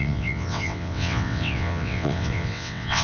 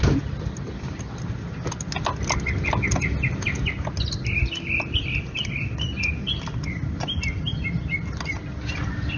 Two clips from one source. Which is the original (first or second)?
second